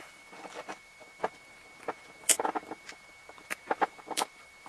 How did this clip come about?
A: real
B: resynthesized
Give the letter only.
B